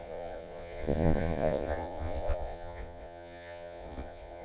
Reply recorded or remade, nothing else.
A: remade